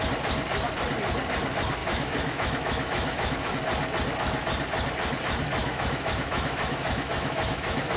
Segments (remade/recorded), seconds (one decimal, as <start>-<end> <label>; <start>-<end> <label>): 0.0-1.8 recorded; 1.8-3.5 remade; 3.5-5.6 recorded; 5.6-8.0 remade